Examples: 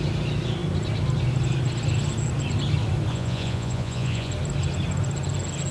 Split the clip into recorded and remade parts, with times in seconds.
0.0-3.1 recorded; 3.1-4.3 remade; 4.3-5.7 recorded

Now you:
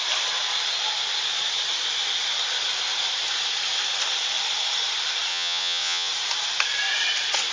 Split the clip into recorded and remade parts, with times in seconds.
0.0-5.3 recorded; 5.3-6.1 remade; 6.1-7.5 recorded

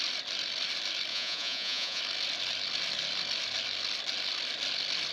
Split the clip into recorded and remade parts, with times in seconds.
0.0-1.1 recorded; 1.1-2.0 remade; 2.0-5.1 recorded

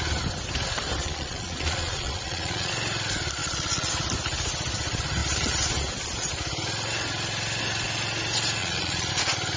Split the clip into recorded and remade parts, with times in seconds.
0.0-1.0 recorded; 1.0-2.7 remade; 2.7-3.4 recorded; 3.4-3.9 remade; 3.9-8.6 recorded; 8.6-9.1 remade; 9.1-9.6 recorded

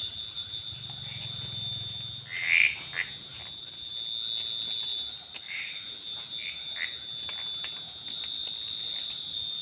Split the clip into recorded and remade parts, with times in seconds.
0.0-9.6 recorded

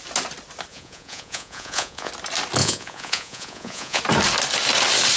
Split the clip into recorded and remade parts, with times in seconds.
0.0-0.7 recorded; 0.7-2.1 remade; 2.1-2.6 recorded; 2.6-4.0 remade; 4.0-5.2 recorded